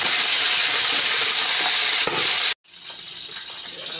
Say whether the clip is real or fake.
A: real